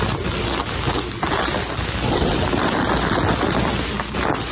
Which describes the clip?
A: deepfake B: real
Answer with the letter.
B